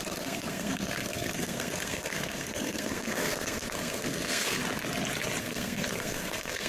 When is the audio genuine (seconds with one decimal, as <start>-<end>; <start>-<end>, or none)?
4.6-5.4